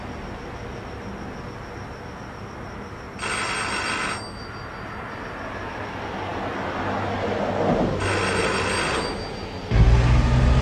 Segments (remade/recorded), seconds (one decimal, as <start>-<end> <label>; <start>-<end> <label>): 0.0-10.6 recorded